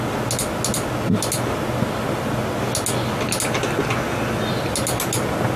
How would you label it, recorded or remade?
recorded